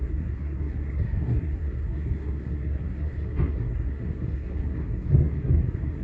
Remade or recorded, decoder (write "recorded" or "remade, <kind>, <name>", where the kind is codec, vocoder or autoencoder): remade, codec, SNAC